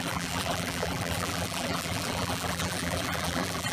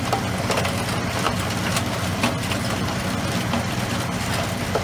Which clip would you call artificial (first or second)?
first